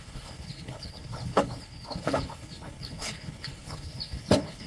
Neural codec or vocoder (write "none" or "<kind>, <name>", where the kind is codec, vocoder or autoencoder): codec, HILCodec